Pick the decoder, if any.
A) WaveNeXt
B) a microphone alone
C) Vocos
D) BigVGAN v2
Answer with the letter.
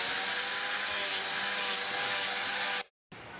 B